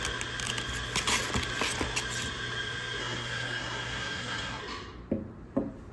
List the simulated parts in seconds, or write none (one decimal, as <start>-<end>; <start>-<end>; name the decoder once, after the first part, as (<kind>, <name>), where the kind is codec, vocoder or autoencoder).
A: 3.0-4.6 (codec, SNAC)